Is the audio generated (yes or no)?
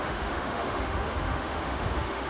yes